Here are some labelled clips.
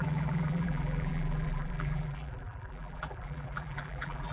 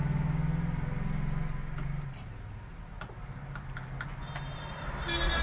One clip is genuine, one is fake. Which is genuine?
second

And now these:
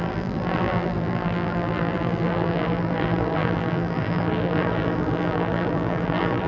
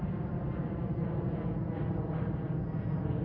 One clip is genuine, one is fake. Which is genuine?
second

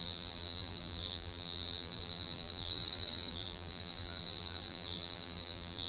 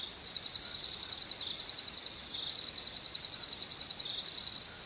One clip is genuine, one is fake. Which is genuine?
second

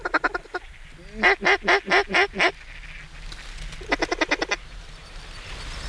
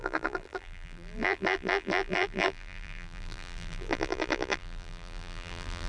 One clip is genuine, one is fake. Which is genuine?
first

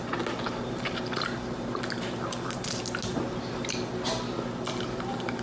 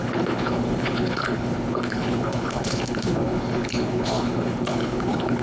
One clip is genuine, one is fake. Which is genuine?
first